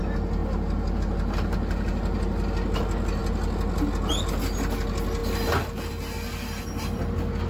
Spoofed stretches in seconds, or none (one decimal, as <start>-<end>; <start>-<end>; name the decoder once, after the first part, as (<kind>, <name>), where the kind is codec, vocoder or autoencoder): none